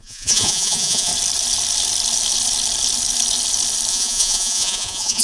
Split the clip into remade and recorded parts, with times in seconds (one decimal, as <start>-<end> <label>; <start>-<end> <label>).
0.0-1.1 remade; 1.1-3.9 recorded; 3.9-5.2 remade